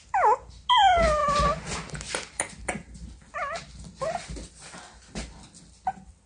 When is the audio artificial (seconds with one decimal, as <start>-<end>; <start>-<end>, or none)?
none